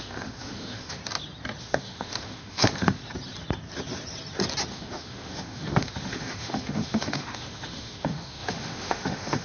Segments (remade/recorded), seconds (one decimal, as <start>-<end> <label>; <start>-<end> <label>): 0.0-1.0 remade; 1.0-1.6 recorded; 1.6-3.0 remade; 3.0-4.7 recorded; 4.7-9.4 remade